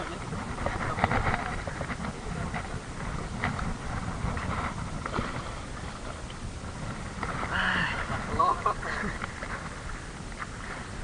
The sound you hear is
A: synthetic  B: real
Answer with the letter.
B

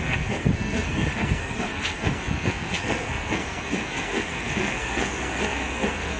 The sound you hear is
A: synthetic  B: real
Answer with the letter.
A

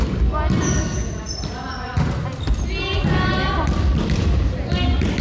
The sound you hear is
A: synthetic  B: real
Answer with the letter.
B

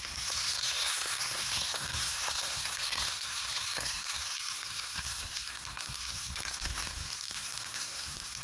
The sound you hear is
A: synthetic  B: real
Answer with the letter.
A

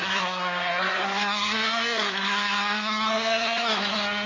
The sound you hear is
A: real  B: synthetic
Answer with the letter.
B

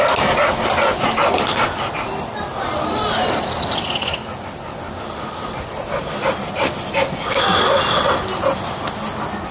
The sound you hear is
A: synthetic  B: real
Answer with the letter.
B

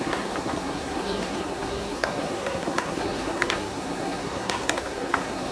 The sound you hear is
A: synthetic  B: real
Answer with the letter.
A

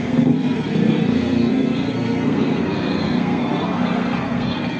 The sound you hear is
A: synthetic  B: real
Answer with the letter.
A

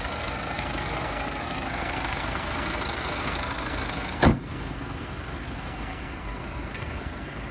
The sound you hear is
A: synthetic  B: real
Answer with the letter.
A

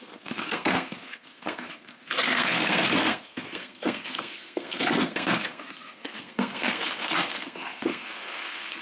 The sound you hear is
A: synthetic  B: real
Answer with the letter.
A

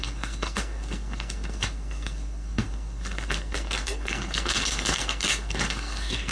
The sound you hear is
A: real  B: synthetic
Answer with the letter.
B